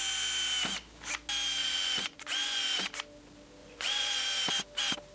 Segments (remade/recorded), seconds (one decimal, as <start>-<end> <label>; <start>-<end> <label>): 0.0-1.6 recorded; 1.6-2.6 remade; 2.6-3.6 recorded; 3.6-4.2 remade; 4.2-5.1 recorded